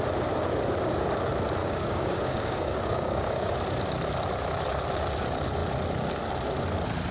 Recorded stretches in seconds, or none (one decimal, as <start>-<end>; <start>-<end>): 0.0-1.6; 3.5-7.1